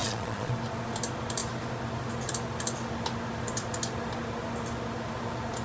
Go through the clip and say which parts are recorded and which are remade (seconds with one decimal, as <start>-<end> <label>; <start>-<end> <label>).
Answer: 0.0-0.5 remade; 0.5-5.6 recorded